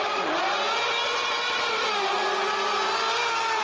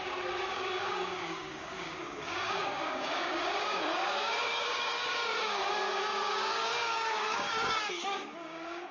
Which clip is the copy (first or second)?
second